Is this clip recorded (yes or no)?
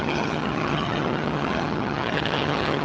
no